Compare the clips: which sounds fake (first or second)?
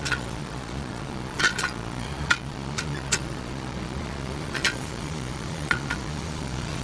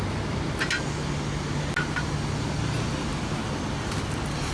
first